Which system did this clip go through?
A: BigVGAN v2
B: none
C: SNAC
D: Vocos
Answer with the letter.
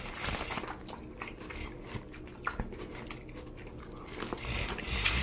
B